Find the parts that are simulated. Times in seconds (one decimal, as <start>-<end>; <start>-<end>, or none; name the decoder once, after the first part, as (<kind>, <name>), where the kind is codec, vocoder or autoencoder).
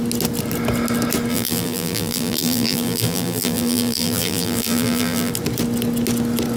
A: 1.3-5.3 (vocoder, BigVGAN v2)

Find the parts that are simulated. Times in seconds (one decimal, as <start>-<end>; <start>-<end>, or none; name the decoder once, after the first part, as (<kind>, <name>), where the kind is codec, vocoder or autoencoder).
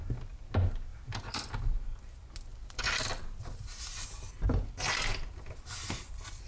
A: 0.9-1.6 (vocoder, BigVGAN v2); 2.5-4.3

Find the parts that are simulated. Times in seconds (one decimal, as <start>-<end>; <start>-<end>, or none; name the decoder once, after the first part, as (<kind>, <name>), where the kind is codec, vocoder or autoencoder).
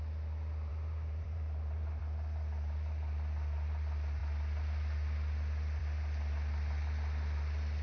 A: 0.7-2.0 (vocoder, BigVGAN v2)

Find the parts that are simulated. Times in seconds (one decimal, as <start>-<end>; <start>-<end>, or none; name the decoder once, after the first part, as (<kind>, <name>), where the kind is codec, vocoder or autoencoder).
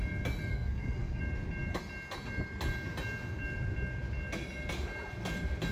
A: 0.5-1.2 (codec, SNAC)